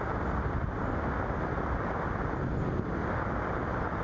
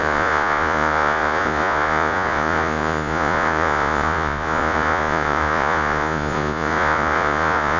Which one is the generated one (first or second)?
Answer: second